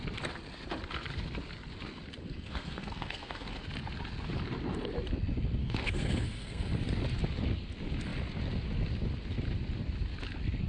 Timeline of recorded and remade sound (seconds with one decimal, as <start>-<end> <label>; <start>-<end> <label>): 0.0-2.2 recorded; 2.2-3.6 remade; 3.6-5.6 recorded; 5.6-6.7 remade; 6.7-10.7 recorded